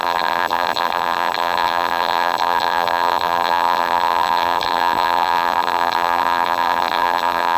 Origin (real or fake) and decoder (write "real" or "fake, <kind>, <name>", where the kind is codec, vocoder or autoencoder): fake, vocoder, BigVGAN v2